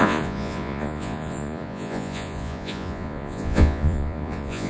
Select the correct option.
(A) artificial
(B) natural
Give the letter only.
A